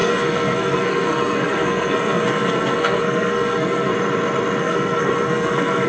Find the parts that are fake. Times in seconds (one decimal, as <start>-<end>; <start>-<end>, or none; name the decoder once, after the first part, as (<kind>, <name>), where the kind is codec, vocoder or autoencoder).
0.0-3.9 (codec, SNAC); 4.6-5.9